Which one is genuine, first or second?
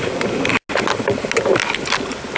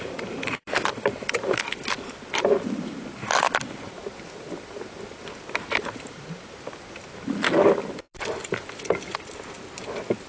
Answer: first